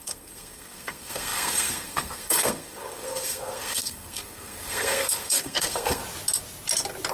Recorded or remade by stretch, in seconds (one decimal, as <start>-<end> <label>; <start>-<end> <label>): 0.0-6.0 remade; 6.0-7.1 recorded